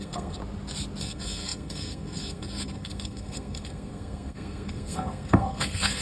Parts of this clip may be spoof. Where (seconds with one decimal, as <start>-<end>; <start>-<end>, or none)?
0.0-0.4; 1.0-6.0